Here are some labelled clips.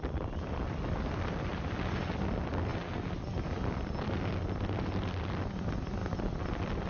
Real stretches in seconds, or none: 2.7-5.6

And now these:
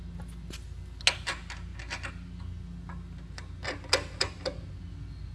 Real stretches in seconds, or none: 0.0-5.3